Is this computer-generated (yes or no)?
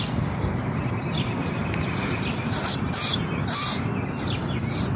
no